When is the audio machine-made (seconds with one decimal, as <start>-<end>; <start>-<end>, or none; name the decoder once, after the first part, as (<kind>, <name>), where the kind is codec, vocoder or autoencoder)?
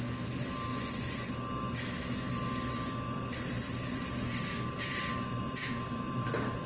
0.7-1.3 (vocoder, Vocos)